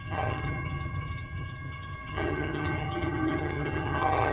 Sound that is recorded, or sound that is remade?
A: remade